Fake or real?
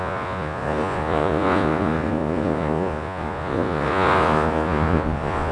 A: fake